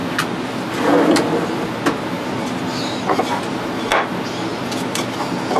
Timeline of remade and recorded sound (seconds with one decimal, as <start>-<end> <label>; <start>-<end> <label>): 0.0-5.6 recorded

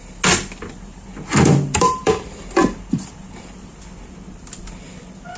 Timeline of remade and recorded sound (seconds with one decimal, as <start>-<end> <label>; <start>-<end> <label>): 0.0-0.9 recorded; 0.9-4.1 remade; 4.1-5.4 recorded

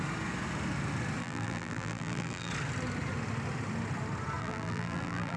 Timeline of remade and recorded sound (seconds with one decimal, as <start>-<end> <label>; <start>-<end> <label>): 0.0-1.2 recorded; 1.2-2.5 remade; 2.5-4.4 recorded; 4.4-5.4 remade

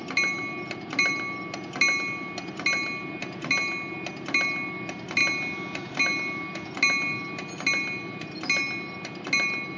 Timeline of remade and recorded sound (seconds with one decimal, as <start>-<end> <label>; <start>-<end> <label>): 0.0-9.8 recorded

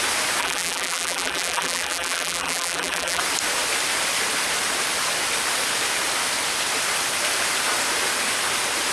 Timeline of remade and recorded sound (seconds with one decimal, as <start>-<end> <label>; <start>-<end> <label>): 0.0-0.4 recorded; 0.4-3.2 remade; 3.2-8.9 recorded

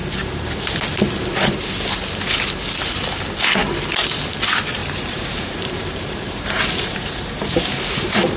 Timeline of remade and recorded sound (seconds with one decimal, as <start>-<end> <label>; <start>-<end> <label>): 0.0-0.5 remade; 0.5-4.8 recorded; 4.8-7.7 remade; 7.7-8.4 recorded